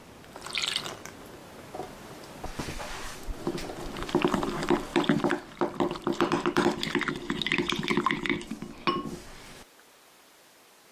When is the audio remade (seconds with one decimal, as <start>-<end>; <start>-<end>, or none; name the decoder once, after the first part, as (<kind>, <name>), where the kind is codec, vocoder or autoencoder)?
1.4-4.4 (vocoder, BigVGAN v2); 4.9-6.8